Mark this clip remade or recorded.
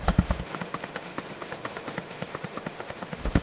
remade